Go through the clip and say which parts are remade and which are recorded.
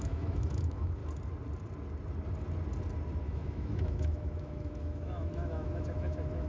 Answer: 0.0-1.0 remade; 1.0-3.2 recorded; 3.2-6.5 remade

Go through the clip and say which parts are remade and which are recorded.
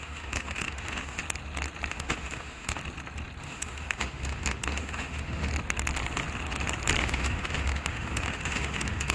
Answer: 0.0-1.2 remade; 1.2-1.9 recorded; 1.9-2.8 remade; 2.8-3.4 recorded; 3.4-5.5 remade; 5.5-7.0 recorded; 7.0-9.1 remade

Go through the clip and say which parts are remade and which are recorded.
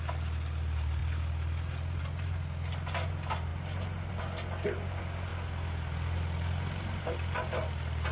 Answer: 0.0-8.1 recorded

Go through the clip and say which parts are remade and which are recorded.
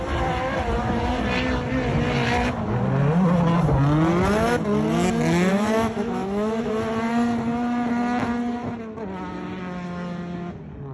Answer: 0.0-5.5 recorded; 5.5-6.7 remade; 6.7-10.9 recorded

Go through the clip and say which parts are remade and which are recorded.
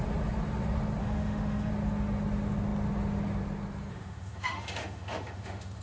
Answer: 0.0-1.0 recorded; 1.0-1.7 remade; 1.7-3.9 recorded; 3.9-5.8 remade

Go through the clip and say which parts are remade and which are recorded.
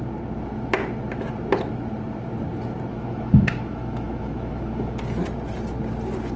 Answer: 0.0-2.9 recorded; 2.9-5.0 remade; 5.0-6.4 recorded